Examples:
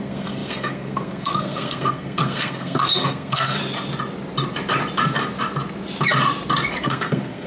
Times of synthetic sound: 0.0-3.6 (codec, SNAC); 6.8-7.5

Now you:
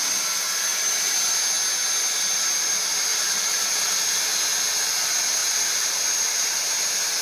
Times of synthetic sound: 3.1-4.2 (vocoder, BigVGAN v2); 5.4-6.6

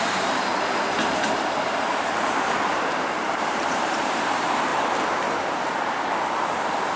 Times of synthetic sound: 0.0-0.5 (vocoder, BigVGAN v2); 1.1-4.7

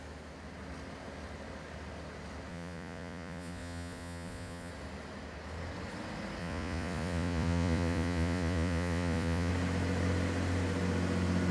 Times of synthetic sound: 2.5-4.7 (vocoder, Vocos); 6.4-9.5